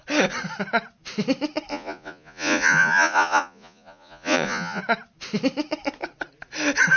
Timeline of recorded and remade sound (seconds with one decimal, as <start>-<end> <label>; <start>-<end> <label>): 0.0-1.7 recorded; 1.7-4.8 remade; 4.8-7.0 recorded